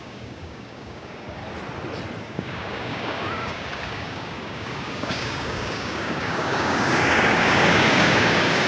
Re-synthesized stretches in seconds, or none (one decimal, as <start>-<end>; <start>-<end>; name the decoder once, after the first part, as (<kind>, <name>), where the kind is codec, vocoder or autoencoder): 0.0-1.4 (codec, DAC); 2.2-8.7